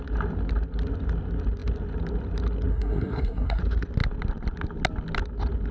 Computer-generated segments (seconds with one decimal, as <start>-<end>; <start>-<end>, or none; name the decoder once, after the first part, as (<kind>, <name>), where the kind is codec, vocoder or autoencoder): 2.7-3.6 (codec, SNAC)